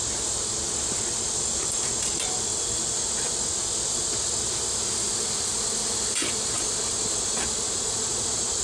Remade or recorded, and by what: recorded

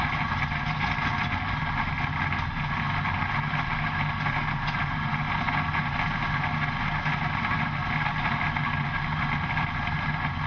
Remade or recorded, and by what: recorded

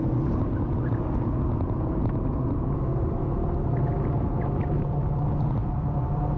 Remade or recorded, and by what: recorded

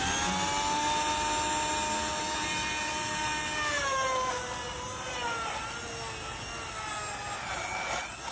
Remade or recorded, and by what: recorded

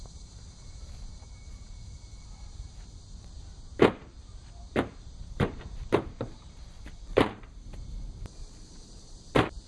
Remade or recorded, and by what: remade, vocoder, BigVGAN v2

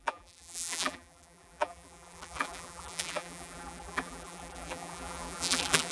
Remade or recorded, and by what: remade, vocoder, BigVGAN v2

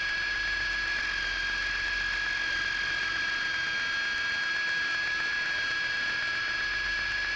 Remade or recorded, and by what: recorded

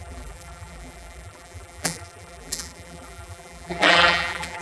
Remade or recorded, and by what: remade, vocoder, BigVGAN v2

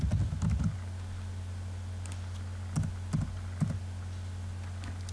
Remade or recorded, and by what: recorded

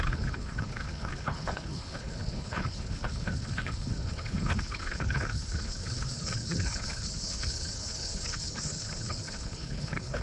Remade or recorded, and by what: remade, codec, HILCodec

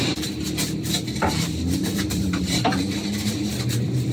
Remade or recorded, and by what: remade, vocoder, BigVGAN v2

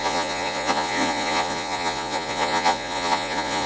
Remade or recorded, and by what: remade, vocoder, Vocos